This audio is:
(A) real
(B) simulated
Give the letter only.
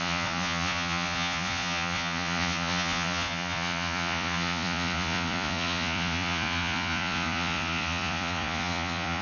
B